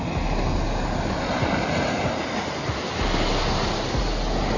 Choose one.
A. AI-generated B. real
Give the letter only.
B